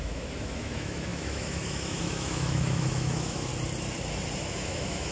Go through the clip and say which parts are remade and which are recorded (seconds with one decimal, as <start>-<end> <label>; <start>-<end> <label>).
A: 0.0-3.5 remade; 3.5-4.4 recorded; 4.4-5.1 remade